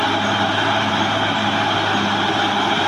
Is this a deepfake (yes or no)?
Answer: yes